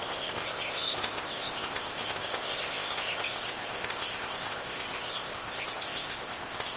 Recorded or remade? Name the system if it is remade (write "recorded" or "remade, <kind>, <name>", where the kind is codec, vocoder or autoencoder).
remade, codec, ZipCodec